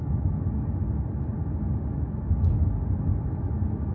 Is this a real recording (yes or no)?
yes